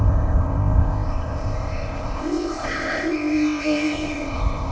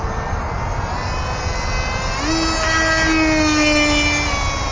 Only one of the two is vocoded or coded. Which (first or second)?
first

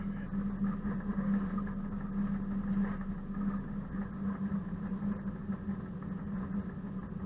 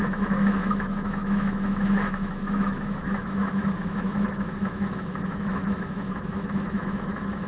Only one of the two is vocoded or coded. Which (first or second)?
second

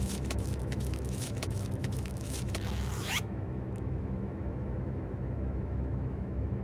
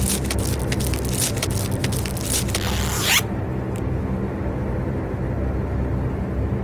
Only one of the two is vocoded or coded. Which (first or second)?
first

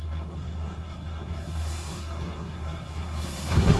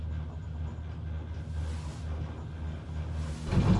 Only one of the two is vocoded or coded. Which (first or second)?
first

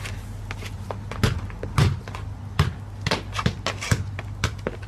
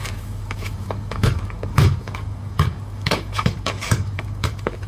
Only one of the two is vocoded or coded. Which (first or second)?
second